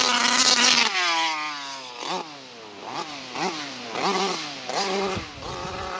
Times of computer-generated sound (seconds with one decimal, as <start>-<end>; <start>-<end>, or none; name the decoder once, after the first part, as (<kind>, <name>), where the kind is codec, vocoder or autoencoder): 2.8-5.5 (vocoder, BigVGAN v2)